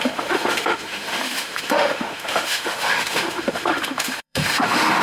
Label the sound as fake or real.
fake